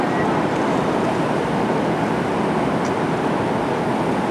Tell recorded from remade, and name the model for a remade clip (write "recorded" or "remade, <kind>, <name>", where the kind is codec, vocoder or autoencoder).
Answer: recorded